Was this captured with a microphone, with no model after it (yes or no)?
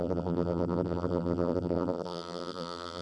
no